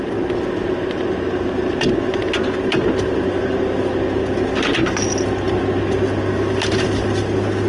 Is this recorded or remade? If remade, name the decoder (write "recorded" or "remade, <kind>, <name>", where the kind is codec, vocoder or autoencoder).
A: recorded